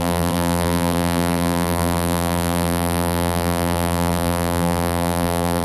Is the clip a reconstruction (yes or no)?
yes